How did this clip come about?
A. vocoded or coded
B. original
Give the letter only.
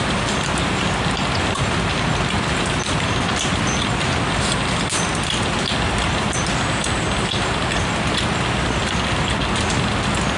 B